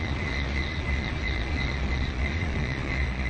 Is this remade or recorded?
remade